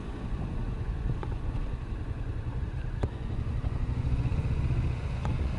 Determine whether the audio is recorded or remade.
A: remade